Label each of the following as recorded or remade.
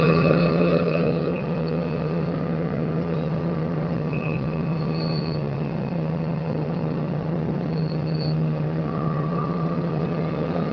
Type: remade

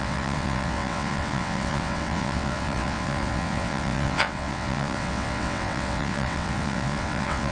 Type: remade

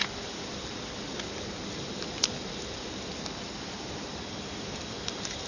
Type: recorded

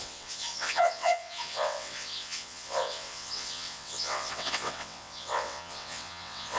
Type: remade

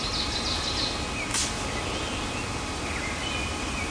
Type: recorded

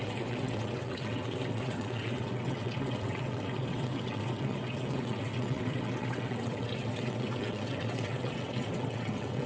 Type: remade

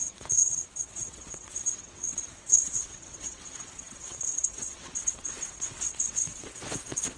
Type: remade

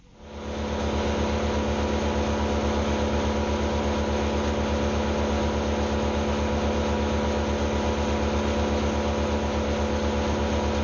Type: recorded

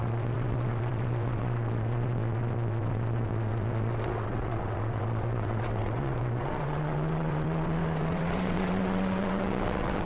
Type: remade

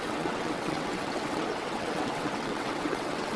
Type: remade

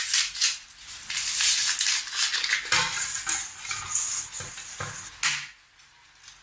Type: recorded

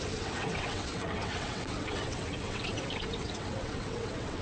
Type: remade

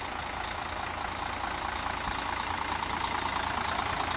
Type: recorded